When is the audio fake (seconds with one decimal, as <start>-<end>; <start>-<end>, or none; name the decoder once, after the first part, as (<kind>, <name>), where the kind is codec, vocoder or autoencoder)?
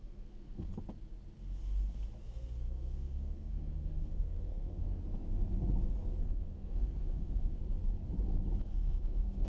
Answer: 0.0-0.7 (codec, SNAC); 2.2-5.0; 6.2-7.6; 8.6-9.5